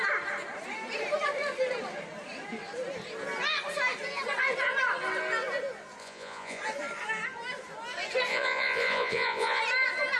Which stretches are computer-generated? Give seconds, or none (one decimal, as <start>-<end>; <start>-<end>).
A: 6.0-6.6; 8.3-9.6